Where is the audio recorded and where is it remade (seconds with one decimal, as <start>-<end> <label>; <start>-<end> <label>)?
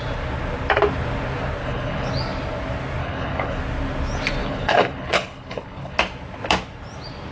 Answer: 0.0-1.6 recorded; 1.6-2.1 remade; 2.1-3.0 recorded; 3.0-3.6 remade; 3.6-4.4 recorded; 4.4-6.0 remade; 6.0-7.3 recorded